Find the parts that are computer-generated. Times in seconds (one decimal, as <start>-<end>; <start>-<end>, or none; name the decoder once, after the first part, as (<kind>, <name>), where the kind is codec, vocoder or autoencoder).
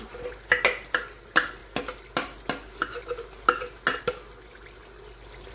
none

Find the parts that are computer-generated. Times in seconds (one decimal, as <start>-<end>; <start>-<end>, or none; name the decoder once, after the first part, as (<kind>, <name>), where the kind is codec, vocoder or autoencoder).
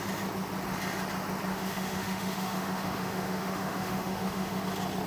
1.5-4.6 (autoencoder, DAC-VAE)